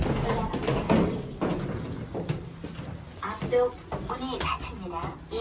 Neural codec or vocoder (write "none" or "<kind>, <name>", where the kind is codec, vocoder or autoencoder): none